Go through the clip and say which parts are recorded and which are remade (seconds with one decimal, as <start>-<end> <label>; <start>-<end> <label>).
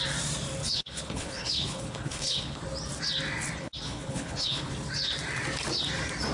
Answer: 0.0-0.6 recorded; 0.6-2.6 remade; 2.6-3.6 recorded; 3.6-4.7 remade; 4.7-6.3 recorded